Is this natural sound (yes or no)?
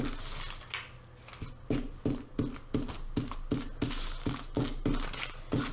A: yes